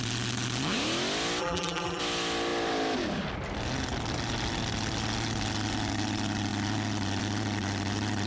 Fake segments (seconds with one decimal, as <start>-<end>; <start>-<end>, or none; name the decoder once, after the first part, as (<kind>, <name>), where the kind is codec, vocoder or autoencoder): 1.4-2.0 (vocoder, BigVGAN v2)